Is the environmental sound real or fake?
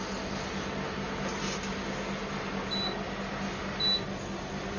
real